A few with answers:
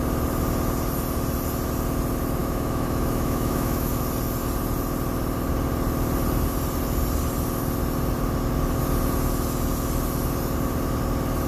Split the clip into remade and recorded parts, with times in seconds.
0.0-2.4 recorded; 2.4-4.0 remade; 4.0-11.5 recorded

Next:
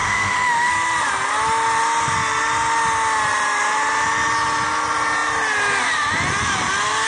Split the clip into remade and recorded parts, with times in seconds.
0.0-0.7 remade; 0.7-7.1 recorded

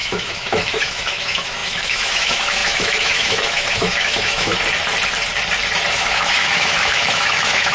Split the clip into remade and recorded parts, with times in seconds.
0.0-4.5 remade; 4.5-5.9 recorded; 5.9-7.7 remade

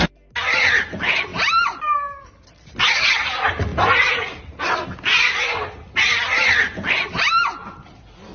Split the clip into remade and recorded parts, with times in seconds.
0.0-8.3 recorded